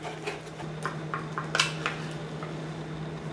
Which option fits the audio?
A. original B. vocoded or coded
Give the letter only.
A